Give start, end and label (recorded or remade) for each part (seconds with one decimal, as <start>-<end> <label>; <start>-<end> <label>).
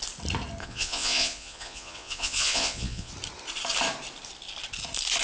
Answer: 0.0-0.6 recorded; 0.6-3.1 remade; 3.1-5.2 recorded